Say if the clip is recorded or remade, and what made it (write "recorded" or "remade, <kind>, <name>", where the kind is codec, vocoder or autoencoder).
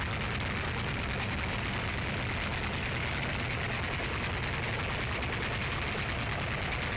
recorded